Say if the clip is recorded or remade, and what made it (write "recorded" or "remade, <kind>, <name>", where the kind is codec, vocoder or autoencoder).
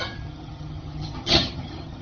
remade, vocoder, HiFi-GAN